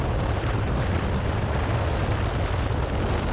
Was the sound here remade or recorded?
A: recorded